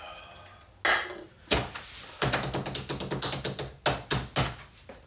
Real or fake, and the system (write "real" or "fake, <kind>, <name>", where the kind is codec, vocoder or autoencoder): real